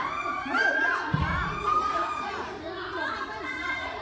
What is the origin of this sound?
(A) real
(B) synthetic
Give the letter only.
B